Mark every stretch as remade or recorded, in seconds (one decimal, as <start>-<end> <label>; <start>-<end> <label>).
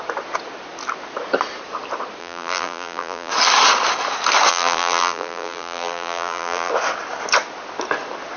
0.0-2.2 recorded; 2.2-3.3 remade; 3.3-4.5 recorded; 4.5-6.7 remade; 6.7-8.4 recorded